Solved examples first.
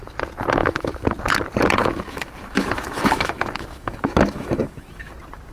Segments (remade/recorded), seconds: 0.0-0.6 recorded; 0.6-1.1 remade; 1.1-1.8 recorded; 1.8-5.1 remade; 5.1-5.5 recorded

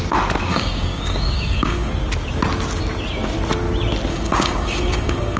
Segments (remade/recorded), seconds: 0.0-0.5 recorded; 0.5-1.9 remade; 1.9-4.1 recorded; 4.1-5.4 remade

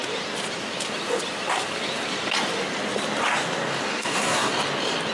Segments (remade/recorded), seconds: 0.0-3.9 recorded; 3.9-4.5 remade; 4.5-5.1 recorded